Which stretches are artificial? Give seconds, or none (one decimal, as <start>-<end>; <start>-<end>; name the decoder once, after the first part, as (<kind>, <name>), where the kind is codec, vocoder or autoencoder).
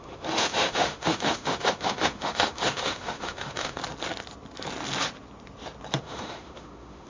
0.0-3.8 (autoencoder, DAC-VAE); 6.0-7.1